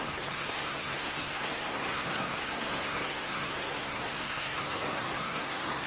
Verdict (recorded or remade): remade